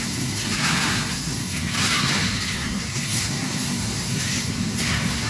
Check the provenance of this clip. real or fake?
fake